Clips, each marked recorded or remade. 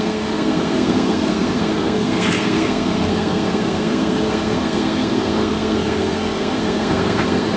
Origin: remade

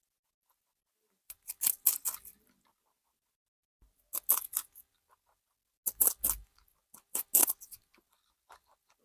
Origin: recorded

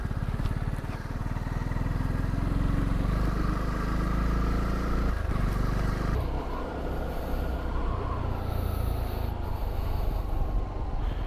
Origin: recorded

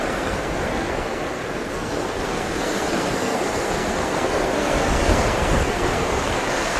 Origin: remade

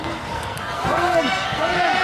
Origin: remade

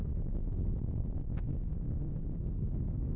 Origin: remade